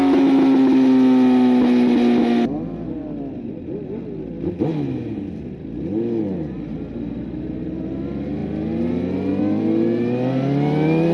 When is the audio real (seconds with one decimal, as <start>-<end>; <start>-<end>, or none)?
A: 0.0-11.1